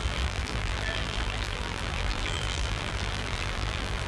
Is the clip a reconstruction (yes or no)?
yes